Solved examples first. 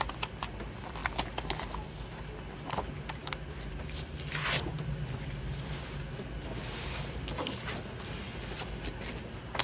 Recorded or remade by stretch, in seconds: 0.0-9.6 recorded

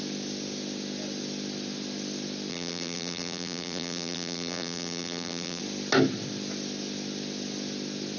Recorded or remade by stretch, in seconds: 0.0-2.5 recorded; 2.5-5.6 remade; 5.6-8.2 recorded

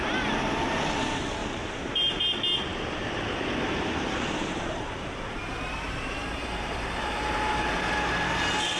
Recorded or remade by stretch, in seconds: 0.0-1.4 recorded; 1.4-2.3 remade; 2.3-2.7 recorded; 2.7-7.9 remade; 7.9-8.8 recorded

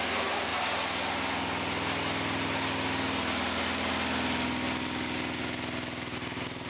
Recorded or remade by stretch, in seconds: 0.0-6.7 recorded

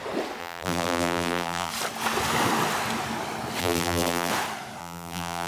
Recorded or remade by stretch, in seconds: 0.0-0.4 recorded; 0.4-1.7 remade; 1.7-3.6 recorded; 3.6-4.3 remade; 4.3-4.8 recorded; 4.8-5.5 remade

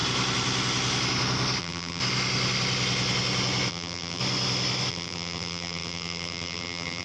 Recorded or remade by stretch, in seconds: 0.0-1.6 recorded; 1.6-2.0 remade; 2.0-3.7 recorded; 3.7-4.2 remade; 4.2-4.9 recorded; 4.9-7.0 remade

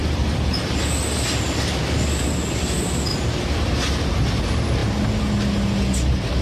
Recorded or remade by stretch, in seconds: 0.0-0.5 remade; 0.5-3.1 recorded; 3.1-3.7 remade; 3.7-6.4 recorded